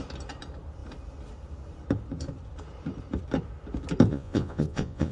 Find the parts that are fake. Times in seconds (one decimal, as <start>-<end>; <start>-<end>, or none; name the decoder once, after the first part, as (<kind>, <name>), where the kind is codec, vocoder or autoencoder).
4.1-5.1 (vocoder, Vocos)